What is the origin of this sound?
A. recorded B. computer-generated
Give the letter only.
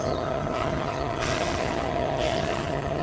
B